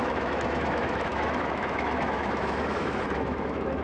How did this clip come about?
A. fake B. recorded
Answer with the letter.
A